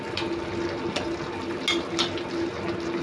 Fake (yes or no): no